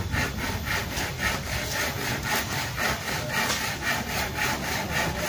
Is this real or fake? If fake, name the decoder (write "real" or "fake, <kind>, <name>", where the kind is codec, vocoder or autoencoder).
real